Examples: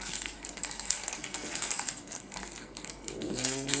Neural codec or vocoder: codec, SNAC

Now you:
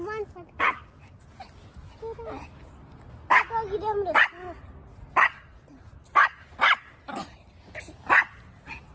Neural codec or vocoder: none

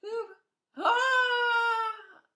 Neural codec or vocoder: none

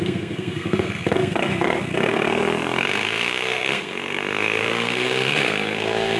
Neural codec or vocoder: codec, SNAC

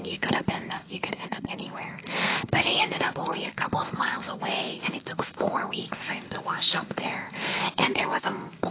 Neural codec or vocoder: codec, SNAC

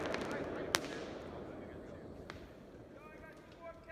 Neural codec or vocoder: none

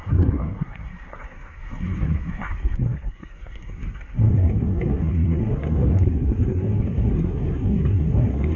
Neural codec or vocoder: codec, SNAC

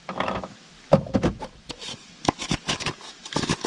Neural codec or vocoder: autoencoder, DAC-VAE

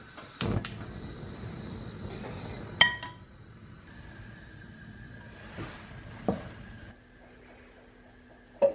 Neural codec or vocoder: none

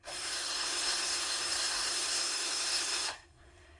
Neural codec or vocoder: codec, SNAC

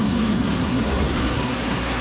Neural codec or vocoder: codec, SNAC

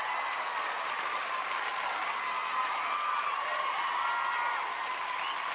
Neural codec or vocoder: none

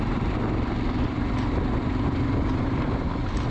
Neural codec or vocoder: none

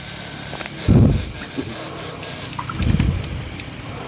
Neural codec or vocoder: none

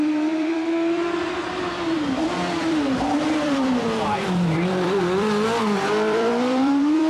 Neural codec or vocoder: vocoder, BigVGAN v2